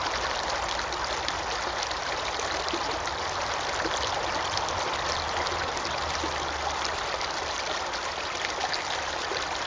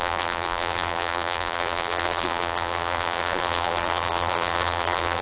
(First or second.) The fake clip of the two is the second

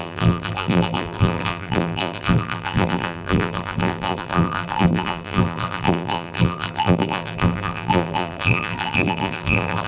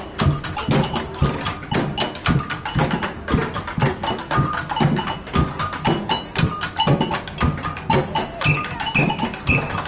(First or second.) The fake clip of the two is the first